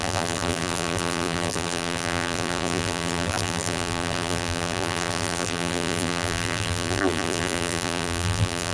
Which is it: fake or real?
fake